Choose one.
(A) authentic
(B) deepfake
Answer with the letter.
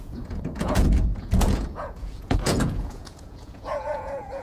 B